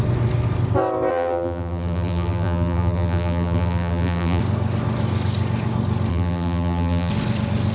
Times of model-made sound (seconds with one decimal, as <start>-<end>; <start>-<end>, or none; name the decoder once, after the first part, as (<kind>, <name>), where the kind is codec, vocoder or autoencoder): 1.1-4.4 (vocoder, BigVGAN v2); 6.1-7.1